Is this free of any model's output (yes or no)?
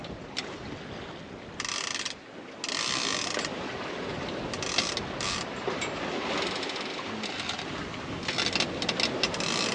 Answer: yes